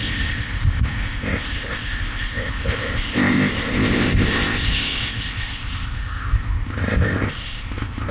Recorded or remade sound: remade